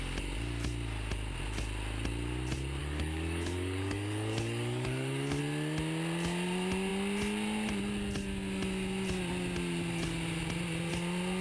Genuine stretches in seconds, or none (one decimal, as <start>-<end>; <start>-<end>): 0.0-2.8; 5.4-11.4